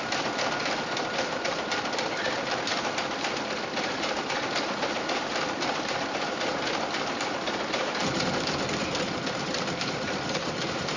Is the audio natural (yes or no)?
no